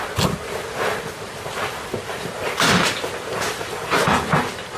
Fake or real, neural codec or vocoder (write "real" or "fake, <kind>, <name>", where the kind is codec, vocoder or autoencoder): real